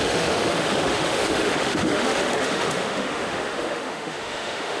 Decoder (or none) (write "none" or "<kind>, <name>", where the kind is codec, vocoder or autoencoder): autoencoder, DAC-VAE